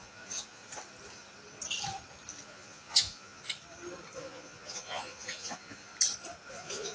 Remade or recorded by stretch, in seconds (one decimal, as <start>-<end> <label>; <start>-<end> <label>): 0.0-0.6 remade; 0.6-2.4 recorded; 2.4-3.4 remade; 3.4-4.2 recorded; 4.2-5.9 remade; 5.9-6.5 recorded; 6.5-6.9 remade